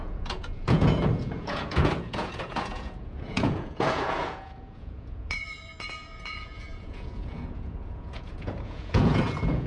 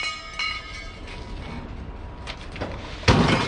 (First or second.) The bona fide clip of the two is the second